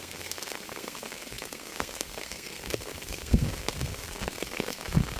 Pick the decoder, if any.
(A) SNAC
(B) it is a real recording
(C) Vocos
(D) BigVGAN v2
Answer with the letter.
A